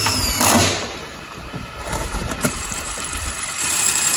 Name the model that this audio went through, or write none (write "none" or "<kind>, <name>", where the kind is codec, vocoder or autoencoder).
vocoder, BigVGAN v2